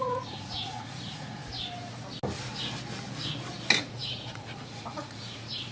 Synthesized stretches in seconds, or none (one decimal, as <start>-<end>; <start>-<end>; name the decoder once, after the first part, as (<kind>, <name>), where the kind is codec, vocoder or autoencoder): 0.0-1.4 (vocoder, Vocos); 3.8-5.7